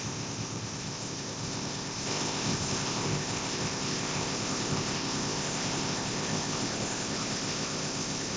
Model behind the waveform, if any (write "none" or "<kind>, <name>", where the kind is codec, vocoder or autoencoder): codec, ZipCodec